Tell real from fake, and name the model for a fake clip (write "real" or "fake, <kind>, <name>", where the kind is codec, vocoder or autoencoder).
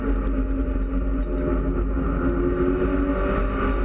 real